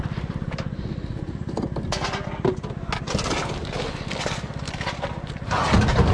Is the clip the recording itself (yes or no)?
yes